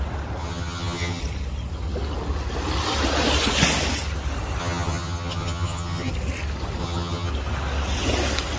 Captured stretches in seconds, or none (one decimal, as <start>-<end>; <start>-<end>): 0.0-0.4; 1.2-4.6; 6.1-6.8; 7.3-8.6